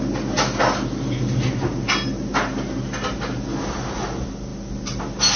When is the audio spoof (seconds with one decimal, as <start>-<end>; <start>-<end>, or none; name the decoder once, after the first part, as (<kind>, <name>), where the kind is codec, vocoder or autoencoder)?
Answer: none

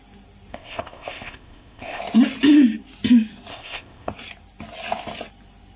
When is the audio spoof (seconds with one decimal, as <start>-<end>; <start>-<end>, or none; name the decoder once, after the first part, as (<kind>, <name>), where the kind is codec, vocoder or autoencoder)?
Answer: 0.5-2.0 (codec, ZipCodec); 3.5-4.1

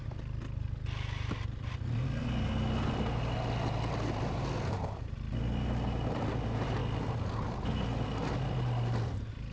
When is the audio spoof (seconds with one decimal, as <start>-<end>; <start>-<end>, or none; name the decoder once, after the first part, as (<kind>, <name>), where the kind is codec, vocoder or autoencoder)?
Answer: none

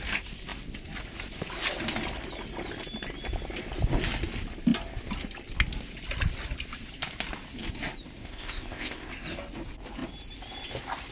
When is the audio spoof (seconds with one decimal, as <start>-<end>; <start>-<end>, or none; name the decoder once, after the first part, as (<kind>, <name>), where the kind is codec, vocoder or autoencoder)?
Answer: 8.2-9.1 (codec, ZipCodec)

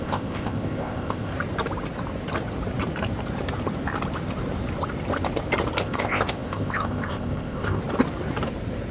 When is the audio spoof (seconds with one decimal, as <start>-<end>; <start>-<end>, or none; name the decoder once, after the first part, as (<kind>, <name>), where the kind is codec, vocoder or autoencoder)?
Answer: 0.0-1.3 (codec, ZipCodec); 5.8-7.8